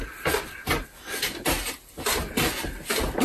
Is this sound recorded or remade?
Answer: recorded